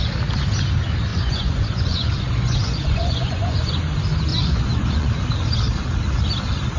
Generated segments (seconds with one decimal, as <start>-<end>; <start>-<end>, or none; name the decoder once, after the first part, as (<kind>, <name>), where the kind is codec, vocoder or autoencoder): 1.1-3.8 (vocoder, Vocos); 4.3-5.1